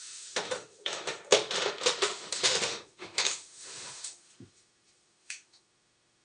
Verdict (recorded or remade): remade